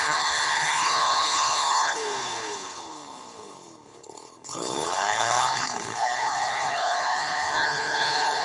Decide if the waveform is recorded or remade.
remade